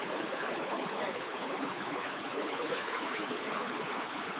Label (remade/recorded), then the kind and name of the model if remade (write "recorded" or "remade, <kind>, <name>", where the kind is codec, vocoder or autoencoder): remade, codec, HILCodec